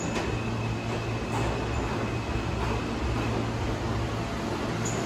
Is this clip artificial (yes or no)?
no